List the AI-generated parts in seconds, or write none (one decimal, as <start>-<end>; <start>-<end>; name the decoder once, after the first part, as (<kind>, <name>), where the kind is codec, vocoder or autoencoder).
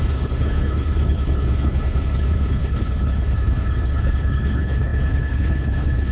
0.0-6.1 (codec, HILCodec)